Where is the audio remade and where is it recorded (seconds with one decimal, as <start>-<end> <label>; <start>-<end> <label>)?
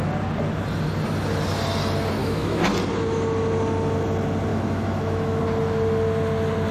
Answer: 0.0-2.2 recorded; 2.2-2.7 remade; 2.7-4.5 recorded; 4.5-5.4 remade; 5.4-6.7 recorded